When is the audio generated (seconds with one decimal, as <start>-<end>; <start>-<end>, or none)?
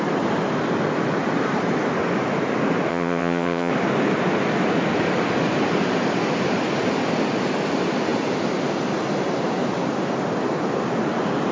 2.9-3.7